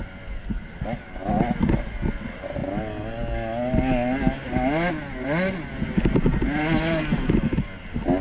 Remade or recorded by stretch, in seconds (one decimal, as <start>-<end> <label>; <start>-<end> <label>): 0.0-8.2 recorded